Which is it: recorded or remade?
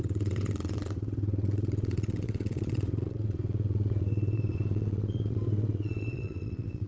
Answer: remade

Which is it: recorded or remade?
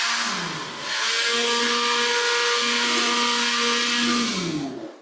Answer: recorded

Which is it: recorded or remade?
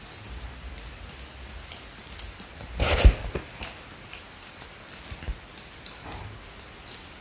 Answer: recorded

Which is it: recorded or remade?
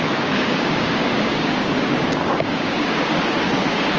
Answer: remade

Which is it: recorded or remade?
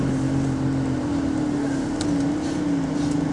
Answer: recorded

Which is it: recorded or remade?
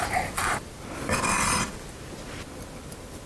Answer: recorded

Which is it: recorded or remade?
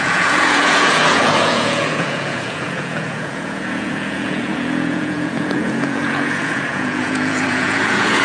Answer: remade